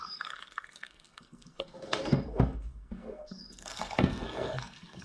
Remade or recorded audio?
remade